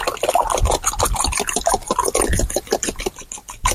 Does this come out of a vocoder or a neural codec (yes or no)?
no